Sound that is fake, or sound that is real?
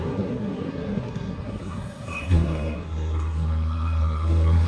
fake